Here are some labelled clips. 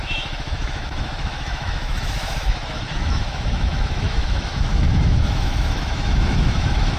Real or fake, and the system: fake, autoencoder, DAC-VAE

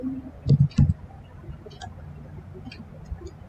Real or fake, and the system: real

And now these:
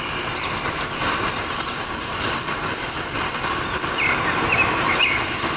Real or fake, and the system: real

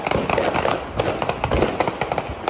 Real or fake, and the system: real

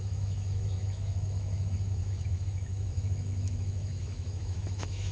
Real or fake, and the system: fake, autoencoder, DAC-VAE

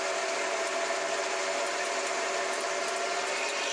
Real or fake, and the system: real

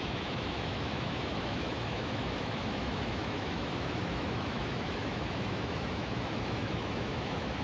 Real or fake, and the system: fake, autoencoder, DAC-VAE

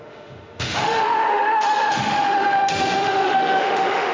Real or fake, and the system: fake, autoencoder, DAC-VAE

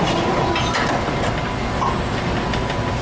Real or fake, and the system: real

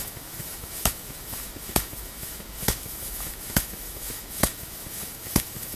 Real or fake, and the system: fake, autoencoder, DAC-VAE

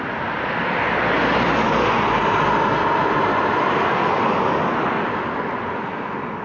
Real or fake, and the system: real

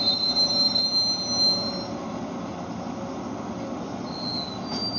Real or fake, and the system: real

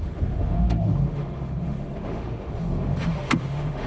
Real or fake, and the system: fake, autoencoder, DAC-VAE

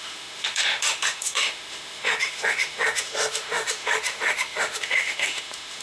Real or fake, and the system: fake, autoencoder, DAC-VAE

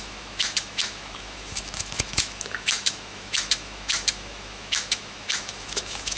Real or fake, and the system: fake, autoencoder, DAC-VAE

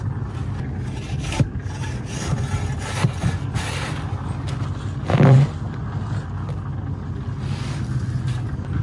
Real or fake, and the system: real